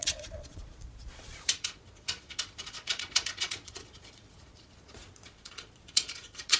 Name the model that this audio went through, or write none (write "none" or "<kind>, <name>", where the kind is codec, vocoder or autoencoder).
vocoder, Vocos